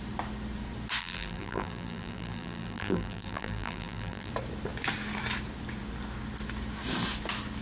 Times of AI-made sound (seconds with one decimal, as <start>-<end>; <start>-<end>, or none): 1.0-4.3